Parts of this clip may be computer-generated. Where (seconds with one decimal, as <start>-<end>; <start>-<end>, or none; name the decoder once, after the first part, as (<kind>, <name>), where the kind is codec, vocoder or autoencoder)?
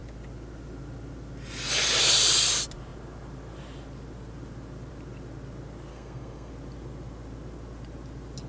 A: 5.9-6.5 (codec, SNAC)